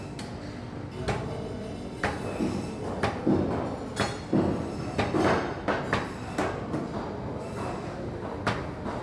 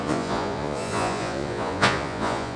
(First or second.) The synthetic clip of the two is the second